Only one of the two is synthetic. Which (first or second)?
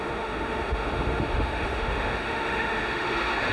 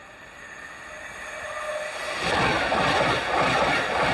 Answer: first